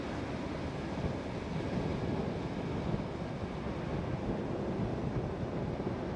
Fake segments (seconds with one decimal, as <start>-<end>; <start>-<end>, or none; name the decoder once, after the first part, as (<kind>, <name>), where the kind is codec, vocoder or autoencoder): none